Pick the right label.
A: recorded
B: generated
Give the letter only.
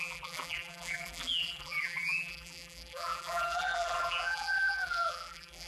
B